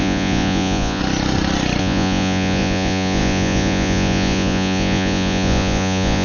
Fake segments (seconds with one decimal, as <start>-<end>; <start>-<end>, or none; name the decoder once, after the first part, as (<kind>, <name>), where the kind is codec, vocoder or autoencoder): 0.0-1.0 (vocoder, Vocos); 1.8-6.2